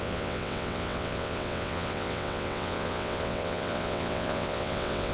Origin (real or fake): fake